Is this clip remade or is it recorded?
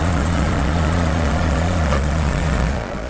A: remade